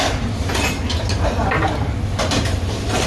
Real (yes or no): yes